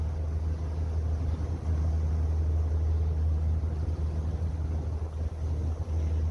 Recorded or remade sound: recorded